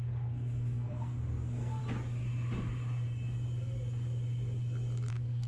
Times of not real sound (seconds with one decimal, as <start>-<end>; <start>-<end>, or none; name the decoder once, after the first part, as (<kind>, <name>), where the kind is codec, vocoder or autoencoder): 0.0-1.8 (codec, SNAC); 5.1-5.5